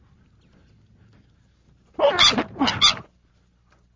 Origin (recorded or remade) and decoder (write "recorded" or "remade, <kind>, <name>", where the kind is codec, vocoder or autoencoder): recorded